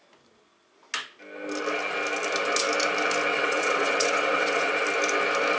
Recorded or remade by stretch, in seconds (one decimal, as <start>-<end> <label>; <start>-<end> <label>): 0.0-3.3 recorded; 3.3-4.7 remade; 4.7-5.6 recorded